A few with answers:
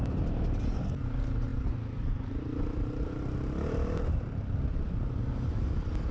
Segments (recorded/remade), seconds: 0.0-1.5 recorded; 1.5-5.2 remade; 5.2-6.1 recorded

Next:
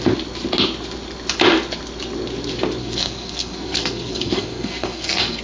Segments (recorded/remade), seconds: 0.0-2.8 recorded; 2.8-5.4 remade